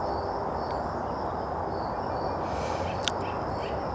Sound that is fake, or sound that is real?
real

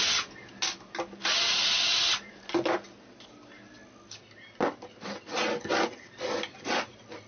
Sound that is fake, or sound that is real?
real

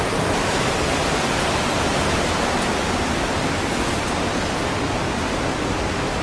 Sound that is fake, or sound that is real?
real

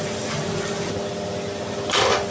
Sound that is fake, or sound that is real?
real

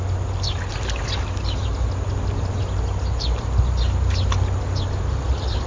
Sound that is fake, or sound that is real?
real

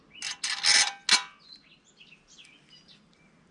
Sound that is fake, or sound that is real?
real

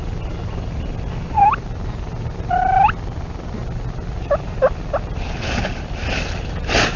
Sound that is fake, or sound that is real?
real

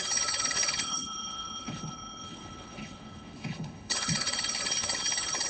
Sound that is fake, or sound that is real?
fake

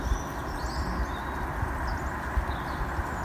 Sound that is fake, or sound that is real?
real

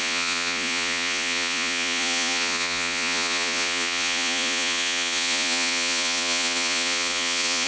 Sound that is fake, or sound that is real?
fake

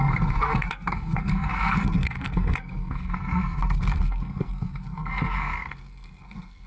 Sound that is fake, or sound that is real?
fake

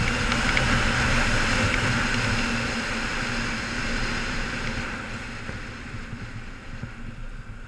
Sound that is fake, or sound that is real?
real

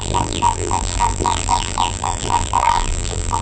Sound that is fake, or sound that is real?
fake